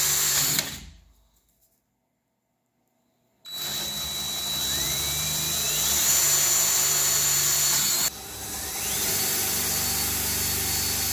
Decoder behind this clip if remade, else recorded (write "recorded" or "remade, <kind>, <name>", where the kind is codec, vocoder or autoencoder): recorded